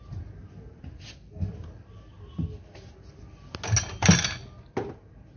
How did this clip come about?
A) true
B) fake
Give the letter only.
A